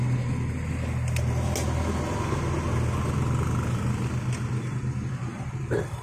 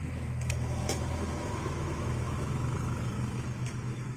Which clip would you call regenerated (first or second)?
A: second